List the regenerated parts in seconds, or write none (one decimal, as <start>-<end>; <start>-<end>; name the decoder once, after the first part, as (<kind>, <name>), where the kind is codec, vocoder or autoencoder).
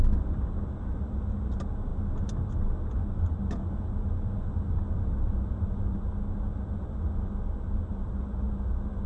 none